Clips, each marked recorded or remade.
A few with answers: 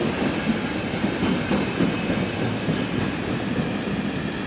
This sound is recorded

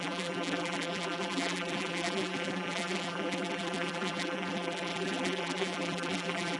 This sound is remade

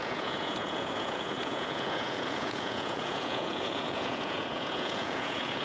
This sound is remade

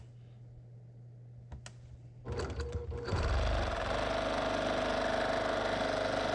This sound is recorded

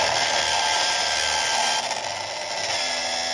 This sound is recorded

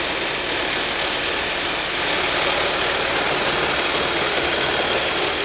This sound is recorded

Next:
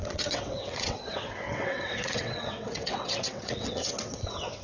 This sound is remade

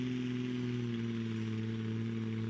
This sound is recorded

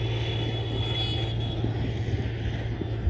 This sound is recorded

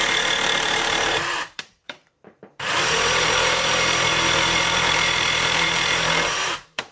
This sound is remade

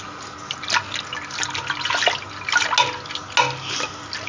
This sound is recorded